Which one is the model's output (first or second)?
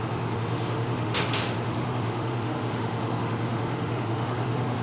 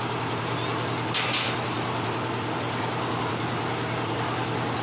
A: first